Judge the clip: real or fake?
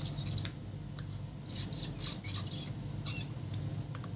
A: real